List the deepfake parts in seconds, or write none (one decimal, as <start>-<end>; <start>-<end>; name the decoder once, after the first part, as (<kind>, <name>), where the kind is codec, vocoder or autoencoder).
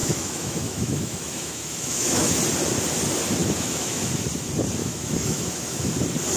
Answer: 0.0-2.4 (autoencoder, DAC-VAE); 3.4-4.1; 4.8-5.9